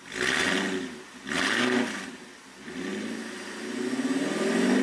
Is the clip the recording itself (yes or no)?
yes